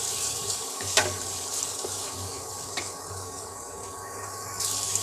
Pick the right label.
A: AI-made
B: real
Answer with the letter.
A